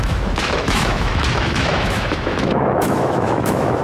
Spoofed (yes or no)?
yes